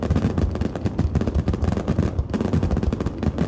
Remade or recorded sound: recorded